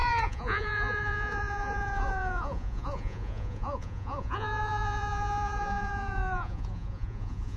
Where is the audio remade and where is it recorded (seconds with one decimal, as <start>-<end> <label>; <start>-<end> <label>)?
0.0-7.6 remade

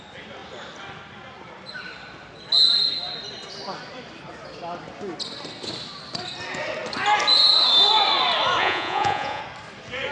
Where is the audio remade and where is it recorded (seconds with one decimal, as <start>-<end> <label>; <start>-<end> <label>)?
0.0-8.6 recorded; 8.6-9.4 remade; 9.4-10.1 recorded